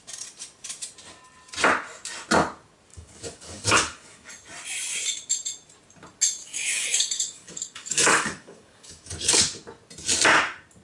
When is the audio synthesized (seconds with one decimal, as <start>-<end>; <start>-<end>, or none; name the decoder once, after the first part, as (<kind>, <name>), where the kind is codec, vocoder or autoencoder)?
2.9-4.3 (codec, DAC); 6.4-9.4